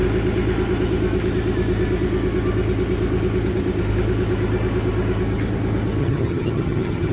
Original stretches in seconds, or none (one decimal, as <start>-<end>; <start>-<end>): 0.0-6.0